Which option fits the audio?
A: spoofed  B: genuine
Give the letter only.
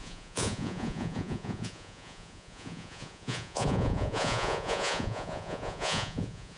A